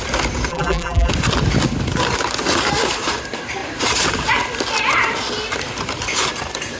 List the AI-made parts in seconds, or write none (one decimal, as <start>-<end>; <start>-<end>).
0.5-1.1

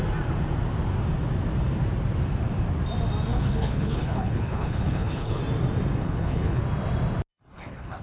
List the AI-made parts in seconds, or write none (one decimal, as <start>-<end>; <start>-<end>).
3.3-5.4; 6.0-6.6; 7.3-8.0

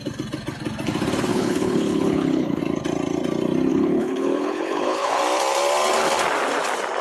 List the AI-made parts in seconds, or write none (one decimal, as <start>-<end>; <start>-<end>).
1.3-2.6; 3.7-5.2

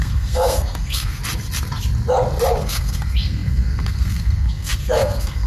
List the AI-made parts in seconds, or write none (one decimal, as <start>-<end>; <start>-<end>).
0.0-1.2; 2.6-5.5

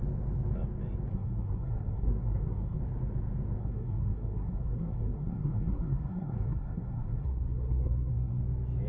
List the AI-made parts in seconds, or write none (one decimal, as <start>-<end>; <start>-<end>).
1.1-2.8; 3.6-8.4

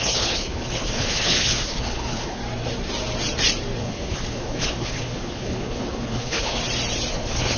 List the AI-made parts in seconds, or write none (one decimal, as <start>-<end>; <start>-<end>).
0.0-2.4; 3.8-6.6; 7.1-7.6

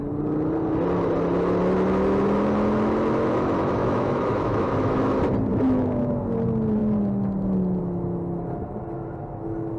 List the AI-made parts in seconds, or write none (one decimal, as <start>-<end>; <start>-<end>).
3.8-5.0; 5.5-6.1